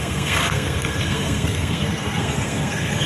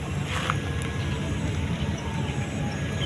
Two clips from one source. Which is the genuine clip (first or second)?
second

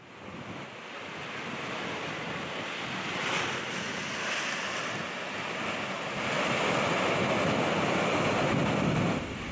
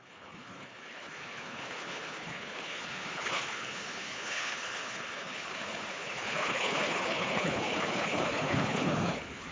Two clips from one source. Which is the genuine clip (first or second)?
first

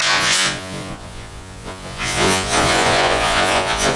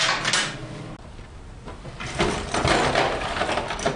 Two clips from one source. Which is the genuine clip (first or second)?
second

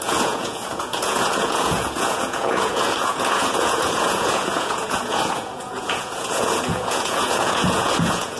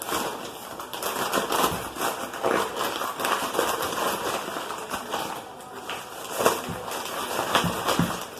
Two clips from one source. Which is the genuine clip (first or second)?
second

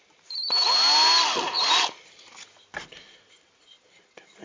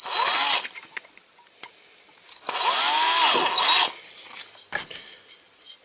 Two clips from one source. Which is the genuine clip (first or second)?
second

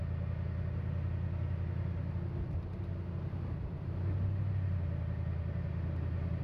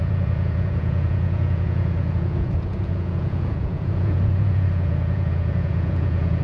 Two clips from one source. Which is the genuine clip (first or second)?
first